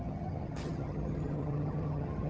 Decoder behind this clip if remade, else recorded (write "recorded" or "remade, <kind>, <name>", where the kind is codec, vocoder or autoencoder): remade, vocoder, HiFi-GAN